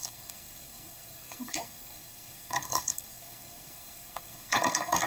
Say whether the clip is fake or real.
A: fake